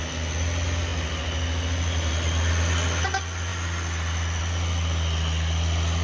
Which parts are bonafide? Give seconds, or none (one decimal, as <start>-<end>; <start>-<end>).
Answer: 0.0-6.0